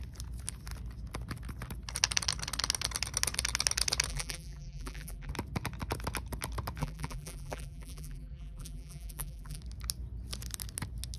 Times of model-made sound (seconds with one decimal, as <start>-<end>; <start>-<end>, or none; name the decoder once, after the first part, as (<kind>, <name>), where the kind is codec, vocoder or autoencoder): 4.1-5.3 (vocoder, BigVGAN v2); 6.8-9.6